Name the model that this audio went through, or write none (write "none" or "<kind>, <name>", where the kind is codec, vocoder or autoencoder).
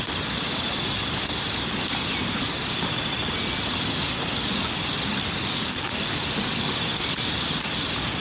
none